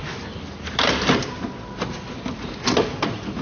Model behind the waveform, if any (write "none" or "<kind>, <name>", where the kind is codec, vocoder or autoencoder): none